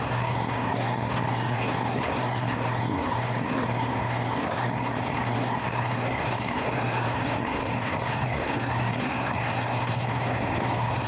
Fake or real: fake